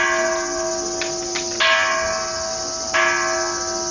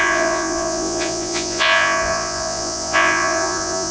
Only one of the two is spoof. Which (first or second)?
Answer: second